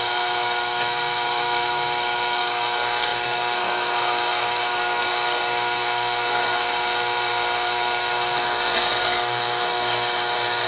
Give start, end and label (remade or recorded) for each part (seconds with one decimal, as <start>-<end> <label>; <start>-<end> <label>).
0.0-10.7 remade